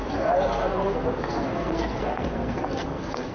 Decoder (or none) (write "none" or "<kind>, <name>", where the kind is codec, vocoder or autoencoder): codec, SNAC